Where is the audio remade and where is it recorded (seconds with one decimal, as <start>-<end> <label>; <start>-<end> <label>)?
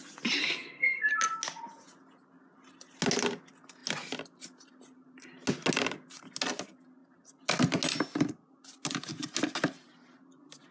0.0-0.4 recorded; 0.4-1.1 remade; 1.1-10.7 recorded